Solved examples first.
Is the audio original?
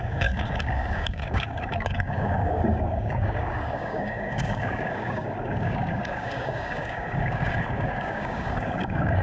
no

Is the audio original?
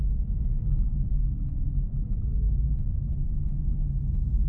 yes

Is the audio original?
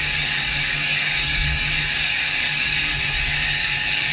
no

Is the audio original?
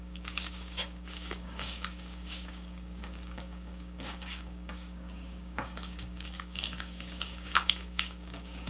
no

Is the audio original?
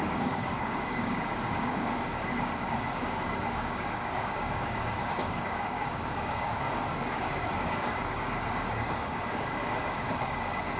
no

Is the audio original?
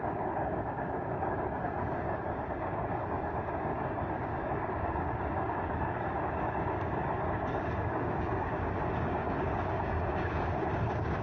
no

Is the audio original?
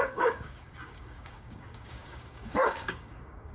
no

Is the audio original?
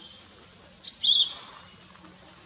yes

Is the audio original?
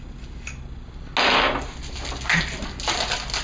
yes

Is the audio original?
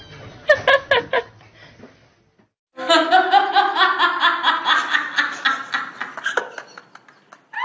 yes